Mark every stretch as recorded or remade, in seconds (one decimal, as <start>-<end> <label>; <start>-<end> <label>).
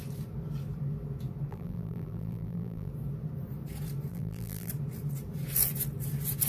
0.0-1.5 recorded; 1.5-2.9 remade; 2.9-4.1 recorded; 4.1-4.7 remade; 4.7-6.5 recorded